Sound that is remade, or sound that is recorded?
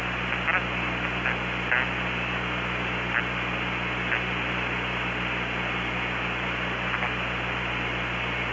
recorded